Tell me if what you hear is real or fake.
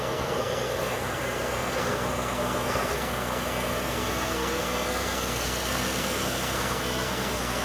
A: fake